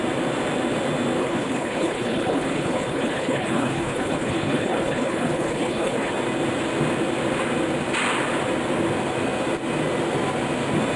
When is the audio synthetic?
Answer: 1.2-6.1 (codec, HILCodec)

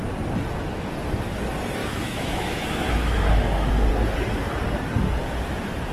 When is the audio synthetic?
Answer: 1.8-3.7 (autoencoder, DAC-VAE)

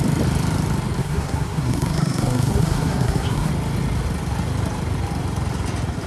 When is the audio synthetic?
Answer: 1.0-3.5 (codec, SNAC)